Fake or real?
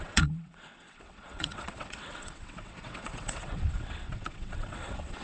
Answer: fake